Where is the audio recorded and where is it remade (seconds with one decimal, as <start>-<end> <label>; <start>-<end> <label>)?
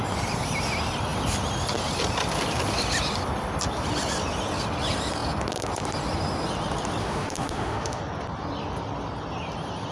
0.0-7.0 recorded; 7.0-8.0 remade; 8.0-9.9 recorded